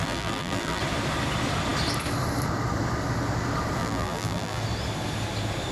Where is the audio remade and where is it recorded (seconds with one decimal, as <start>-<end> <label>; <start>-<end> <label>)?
0.0-0.8 remade; 0.8-3.8 recorded; 3.8-4.6 remade; 4.6-5.7 recorded